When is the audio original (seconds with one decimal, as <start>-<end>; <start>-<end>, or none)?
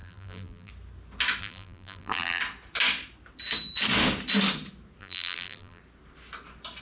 0.7-1.4; 2.4-5.0; 5.8-6.8